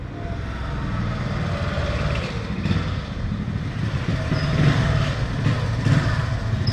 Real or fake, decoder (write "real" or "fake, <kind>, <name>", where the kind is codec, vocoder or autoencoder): real